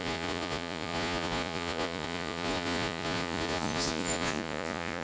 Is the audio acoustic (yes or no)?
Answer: no